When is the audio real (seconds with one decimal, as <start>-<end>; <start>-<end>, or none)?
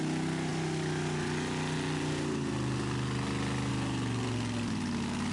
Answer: 0.0-5.3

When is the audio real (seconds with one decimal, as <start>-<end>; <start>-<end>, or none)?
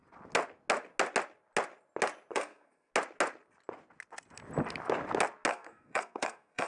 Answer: 0.0-2.3; 2.9-5.5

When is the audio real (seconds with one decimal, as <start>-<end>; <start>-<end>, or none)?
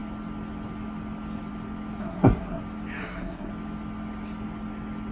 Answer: 0.0-2.0; 2.6-3.0; 3.5-5.1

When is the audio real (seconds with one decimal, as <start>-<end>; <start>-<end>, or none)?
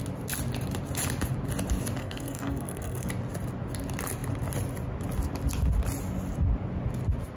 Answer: 0.0-2.0; 3.1-7.4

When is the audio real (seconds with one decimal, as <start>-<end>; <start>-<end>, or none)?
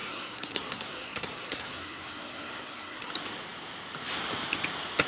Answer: 3.1-5.1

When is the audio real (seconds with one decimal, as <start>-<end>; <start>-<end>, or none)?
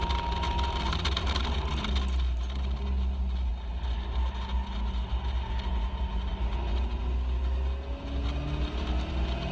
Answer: 0.0-9.5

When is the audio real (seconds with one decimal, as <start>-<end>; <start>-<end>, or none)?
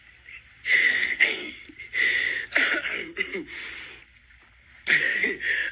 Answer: 0.0-0.9; 1.5-5.7